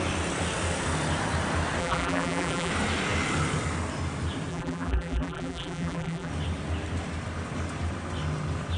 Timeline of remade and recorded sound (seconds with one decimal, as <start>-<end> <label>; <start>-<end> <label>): 0.0-1.8 recorded; 1.8-2.7 remade; 2.7-4.5 recorded; 4.5-6.3 remade; 6.3-8.8 recorded